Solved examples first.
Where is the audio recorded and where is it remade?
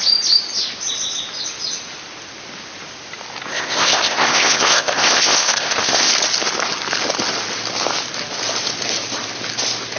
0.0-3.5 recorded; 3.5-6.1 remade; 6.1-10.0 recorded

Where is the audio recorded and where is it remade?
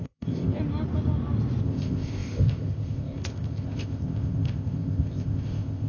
0.0-0.6 remade; 0.6-1.6 recorded; 1.6-5.9 remade